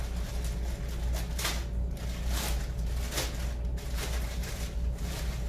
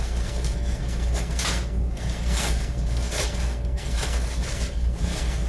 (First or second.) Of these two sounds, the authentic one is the first